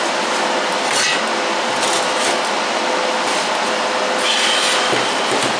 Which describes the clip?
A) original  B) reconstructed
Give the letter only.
A